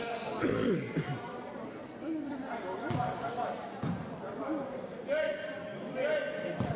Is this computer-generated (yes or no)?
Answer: no